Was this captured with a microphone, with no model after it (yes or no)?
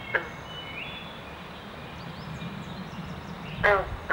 yes